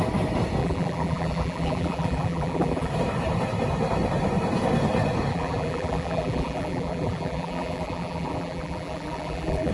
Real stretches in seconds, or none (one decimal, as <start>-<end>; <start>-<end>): 0.0-0.6; 2.9-5.3